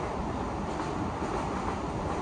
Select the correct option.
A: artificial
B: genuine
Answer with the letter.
B